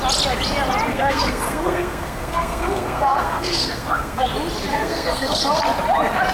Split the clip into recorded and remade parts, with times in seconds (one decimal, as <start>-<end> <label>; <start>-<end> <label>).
0.0-0.9 recorded; 0.9-4.3 remade; 4.3-4.7 recorded; 4.7-5.6 remade; 5.6-6.3 recorded